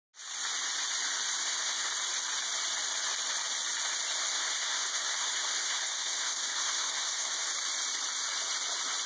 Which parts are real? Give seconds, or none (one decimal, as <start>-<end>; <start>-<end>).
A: 0.0-1.4; 1.9-4.2; 7.5-9.1